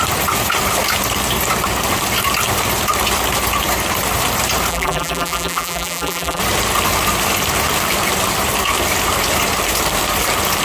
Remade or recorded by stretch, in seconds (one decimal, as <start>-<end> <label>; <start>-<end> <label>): 0.0-4.7 recorded; 4.7-6.4 remade; 6.4-10.6 recorded